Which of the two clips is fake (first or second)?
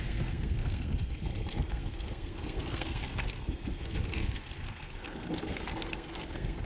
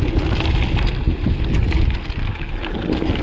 first